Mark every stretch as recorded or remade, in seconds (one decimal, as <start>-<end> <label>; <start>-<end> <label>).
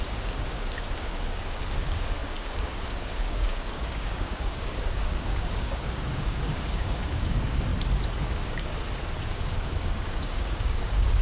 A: 0.0-7.7 remade; 7.7-8.2 recorded; 8.2-8.7 remade; 8.7-9.2 recorded; 9.2-11.2 remade